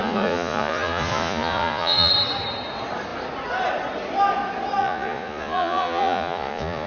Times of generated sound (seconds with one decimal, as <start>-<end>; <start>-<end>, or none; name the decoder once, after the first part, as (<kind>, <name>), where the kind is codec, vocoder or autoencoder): 0.0-2.1 (vocoder, Vocos); 4.8-6.9